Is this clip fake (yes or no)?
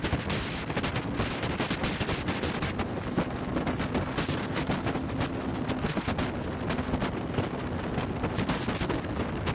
no